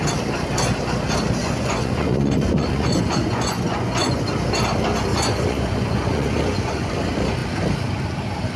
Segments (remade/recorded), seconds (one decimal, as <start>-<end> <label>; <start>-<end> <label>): 0.0-1.4 recorded; 1.4-4.2 remade; 4.2-5.1 recorded; 5.1-6.9 remade; 6.9-8.6 recorded